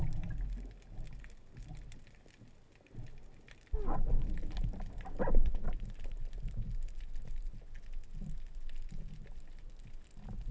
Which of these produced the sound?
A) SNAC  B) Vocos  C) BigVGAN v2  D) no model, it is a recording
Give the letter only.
D